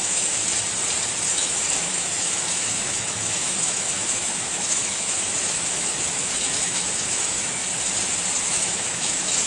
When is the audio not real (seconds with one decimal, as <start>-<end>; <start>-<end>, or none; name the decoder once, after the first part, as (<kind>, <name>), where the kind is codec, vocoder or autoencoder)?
0.0-0.4 (autoencoder, DAC-VAE); 1.3-7.6; 8.4-9.5